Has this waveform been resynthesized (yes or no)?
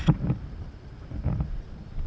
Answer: no